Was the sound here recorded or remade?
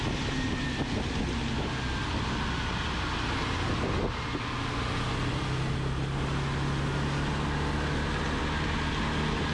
recorded